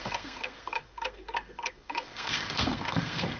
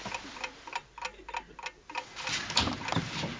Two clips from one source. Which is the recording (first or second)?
second